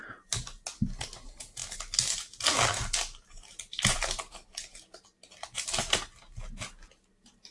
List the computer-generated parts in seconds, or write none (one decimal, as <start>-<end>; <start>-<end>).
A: none